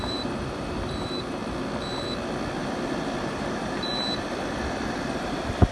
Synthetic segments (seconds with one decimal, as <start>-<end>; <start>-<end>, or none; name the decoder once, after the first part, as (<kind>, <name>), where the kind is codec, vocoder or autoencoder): 0.0-1.4 (vocoder, BigVGAN v2); 3.3-3.9; 5.2-5.7